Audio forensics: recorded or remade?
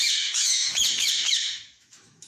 remade